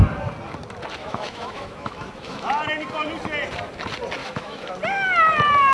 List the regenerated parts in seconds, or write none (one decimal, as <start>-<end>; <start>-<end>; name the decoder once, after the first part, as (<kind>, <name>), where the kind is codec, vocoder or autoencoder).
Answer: 1.0-2.5 (autoencoder, DAC-VAE); 4.2-4.7